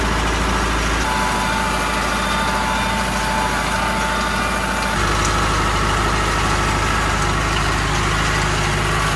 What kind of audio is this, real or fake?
real